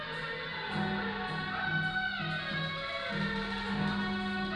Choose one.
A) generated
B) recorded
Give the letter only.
B